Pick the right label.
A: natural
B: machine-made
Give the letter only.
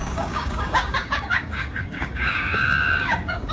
B